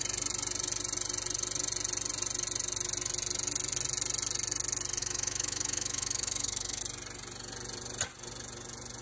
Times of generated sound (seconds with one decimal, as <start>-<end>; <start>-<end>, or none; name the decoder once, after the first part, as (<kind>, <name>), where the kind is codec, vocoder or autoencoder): 5.0-6.8 (autoencoder, DAC-VAE)